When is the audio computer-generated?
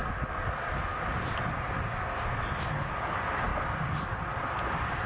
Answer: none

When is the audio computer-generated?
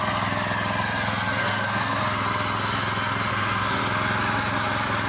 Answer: 1.4-2.0 (codec, SNAC); 3.3-3.8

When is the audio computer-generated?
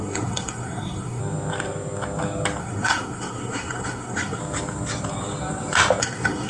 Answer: 0.0-1.2 (codec, SNAC); 2.6-4.4; 6.0-6.5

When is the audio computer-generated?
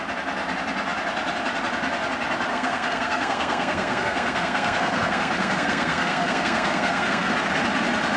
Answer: 2.5-7.3 (codec, SNAC)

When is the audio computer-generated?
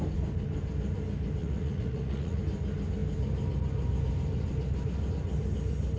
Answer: 1.4-2.4 (vocoder, Vocos)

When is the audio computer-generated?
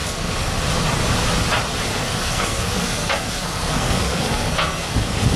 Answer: 0.0-0.5 (codec, SNAC); 1.9-5.4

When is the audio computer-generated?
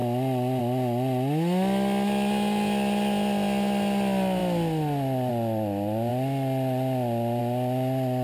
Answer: none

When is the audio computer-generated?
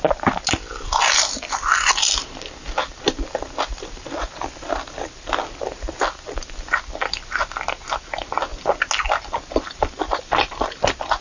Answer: none